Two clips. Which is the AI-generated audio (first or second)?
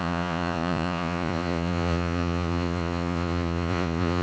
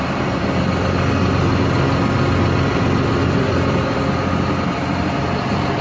first